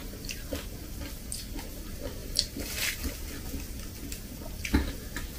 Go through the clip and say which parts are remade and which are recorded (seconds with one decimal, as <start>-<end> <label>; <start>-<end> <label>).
0.0-2.2 recorded; 2.2-2.8 remade; 2.8-5.4 recorded